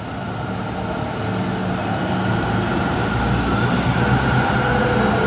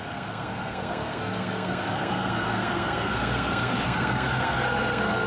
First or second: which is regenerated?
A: second